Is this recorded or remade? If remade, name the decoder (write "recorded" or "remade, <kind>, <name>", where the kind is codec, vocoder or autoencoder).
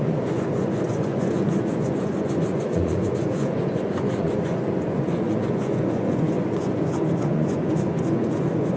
remade, vocoder, Vocos